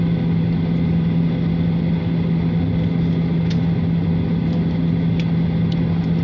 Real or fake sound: real